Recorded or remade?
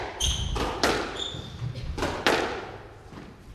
remade